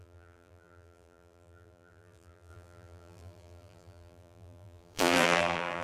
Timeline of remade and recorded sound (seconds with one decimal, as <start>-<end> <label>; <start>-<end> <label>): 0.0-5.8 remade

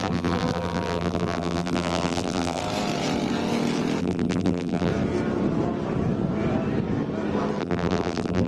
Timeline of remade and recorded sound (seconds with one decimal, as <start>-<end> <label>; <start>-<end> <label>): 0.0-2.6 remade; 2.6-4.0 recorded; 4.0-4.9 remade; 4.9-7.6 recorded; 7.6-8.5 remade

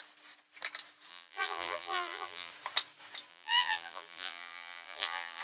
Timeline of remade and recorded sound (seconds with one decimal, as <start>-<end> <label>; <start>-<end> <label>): 0.0-1.1 recorded; 1.1-2.5 remade; 2.5-3.3 recorded; 3.3-5.4 remade

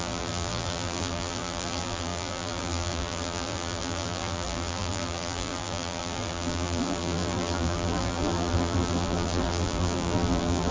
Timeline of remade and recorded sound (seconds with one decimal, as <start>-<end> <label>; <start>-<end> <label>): 0.0-10.7 remade

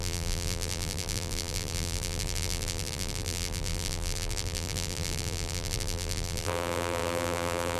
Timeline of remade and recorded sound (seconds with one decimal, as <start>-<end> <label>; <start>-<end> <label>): 0.0-7.8 remade

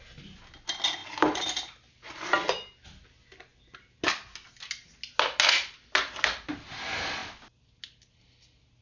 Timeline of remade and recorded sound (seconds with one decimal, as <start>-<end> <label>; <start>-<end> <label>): 0.0-8.8 recorded